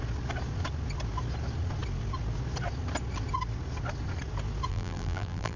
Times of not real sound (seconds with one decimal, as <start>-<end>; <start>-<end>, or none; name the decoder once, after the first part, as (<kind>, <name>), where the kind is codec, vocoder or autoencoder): 4.7-5.6 (vocoder, BigVGAN v2)